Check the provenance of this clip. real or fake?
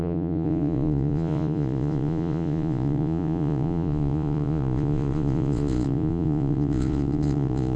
fake